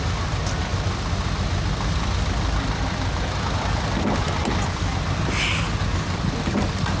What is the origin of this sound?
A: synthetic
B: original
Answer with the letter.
B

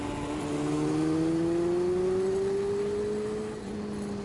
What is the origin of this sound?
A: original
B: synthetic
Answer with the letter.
A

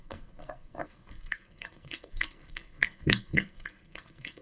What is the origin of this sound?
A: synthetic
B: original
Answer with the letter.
A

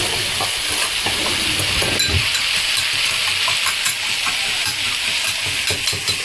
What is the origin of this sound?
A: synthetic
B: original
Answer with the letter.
B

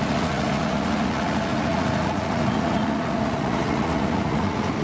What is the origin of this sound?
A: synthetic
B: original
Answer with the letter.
A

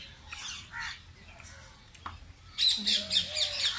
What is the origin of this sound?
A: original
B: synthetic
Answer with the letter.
A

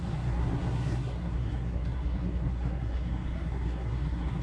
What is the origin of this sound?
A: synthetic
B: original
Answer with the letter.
A